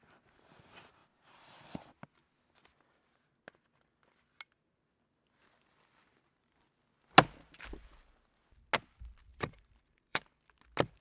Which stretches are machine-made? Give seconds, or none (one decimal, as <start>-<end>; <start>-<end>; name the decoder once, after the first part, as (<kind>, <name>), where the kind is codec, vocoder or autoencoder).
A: 9.3-10.3 (vocoder, BigVGAN v2)